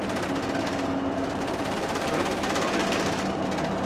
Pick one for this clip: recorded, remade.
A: recorded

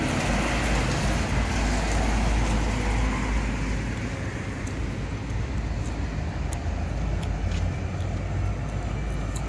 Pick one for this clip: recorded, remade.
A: recorded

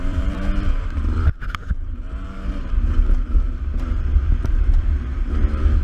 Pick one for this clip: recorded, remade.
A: remade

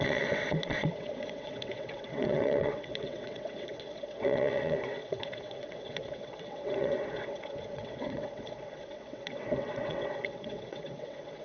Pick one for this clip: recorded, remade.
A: remade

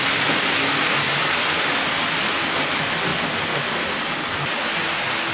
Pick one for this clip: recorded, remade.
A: recorded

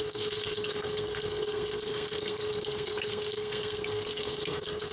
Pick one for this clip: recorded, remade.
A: remade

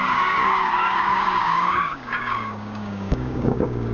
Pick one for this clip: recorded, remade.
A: remade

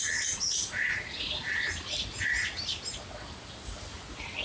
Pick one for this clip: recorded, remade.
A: recorded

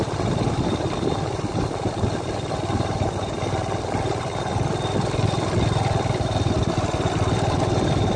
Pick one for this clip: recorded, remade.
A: remade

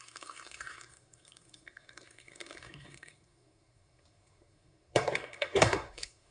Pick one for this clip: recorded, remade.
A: remade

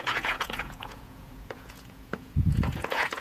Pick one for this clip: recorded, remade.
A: remade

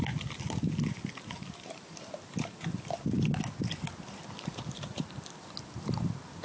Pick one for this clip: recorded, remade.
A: recorded